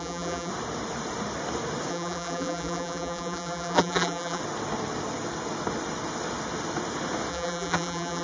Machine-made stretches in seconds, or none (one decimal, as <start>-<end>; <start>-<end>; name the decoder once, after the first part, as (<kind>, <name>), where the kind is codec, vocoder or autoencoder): 0.0-0.5 (vocoder, BigVGAN v2); 1.9-4.4; 7.3-8.2

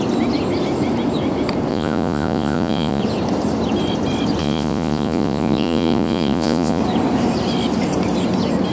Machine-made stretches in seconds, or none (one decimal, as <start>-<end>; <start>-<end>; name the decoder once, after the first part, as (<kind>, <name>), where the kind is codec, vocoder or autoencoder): 1.7-3.0 (vocoder, Vocos); 4.4-6.8

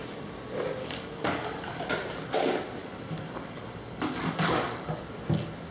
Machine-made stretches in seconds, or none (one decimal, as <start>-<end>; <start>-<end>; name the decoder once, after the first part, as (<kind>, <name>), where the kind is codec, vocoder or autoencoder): 0.8-1.8 (codec, DAC); 2.8-5.0

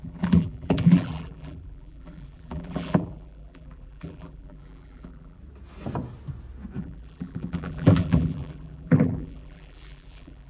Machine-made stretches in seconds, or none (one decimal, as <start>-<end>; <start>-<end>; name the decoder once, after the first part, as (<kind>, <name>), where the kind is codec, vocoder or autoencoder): 0.0-5.4 (vocoder, BigVGAN v2); 6.8-10.5

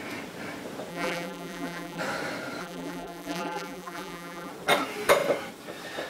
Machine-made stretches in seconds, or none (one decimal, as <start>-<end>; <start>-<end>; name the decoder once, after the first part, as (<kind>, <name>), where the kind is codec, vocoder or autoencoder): 0.9-2.0 (vocoder, BigVGAN v2); 2.6-4.5

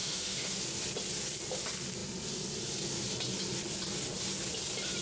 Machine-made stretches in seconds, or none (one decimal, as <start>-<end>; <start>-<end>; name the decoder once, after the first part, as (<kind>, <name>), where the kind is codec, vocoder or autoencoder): 0.0-0.6 (autoencoder, DAC-VAE)

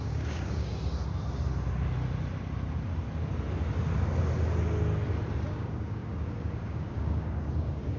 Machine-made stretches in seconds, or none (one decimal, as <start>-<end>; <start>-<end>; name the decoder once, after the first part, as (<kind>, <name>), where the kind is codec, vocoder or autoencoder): 0.0-0.8 (codec, DAC); 5.5-8.0

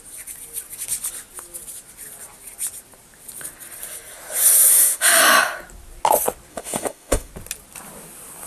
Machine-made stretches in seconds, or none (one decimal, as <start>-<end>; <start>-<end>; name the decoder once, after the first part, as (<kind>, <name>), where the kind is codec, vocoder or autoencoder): 4.7-5.2 (autoencoder, DAC-VAE); 6.5-7.3